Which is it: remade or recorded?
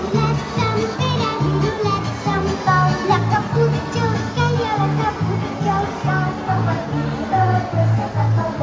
recorded